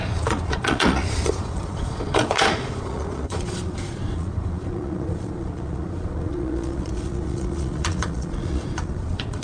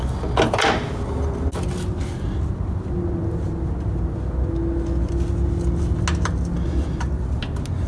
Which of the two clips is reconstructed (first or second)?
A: first